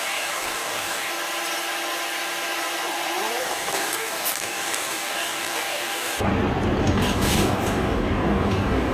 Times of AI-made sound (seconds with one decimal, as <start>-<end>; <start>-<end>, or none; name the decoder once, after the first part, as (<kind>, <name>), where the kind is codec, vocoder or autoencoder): 0.0-1.1 (codec, DAC); 3.4-6.3; 6.8-8.9

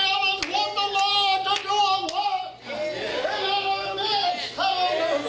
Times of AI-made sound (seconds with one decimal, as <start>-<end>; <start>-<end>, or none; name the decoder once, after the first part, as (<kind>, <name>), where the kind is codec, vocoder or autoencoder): 3.1-4.3 (codec, DAC)

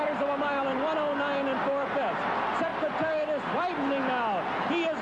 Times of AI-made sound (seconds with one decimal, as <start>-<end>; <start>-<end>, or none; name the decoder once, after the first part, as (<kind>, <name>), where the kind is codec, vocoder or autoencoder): none

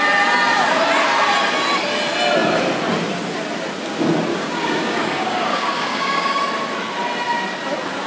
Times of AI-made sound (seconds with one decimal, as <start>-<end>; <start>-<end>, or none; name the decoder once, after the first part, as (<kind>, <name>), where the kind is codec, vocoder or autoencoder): 4.3-6.4 (codec, DAC)